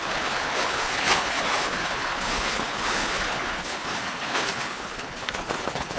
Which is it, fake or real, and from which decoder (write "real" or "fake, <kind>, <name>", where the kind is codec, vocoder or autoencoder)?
fake, codec, HILCodec